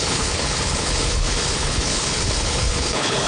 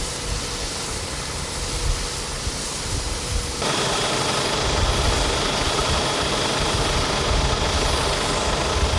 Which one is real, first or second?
second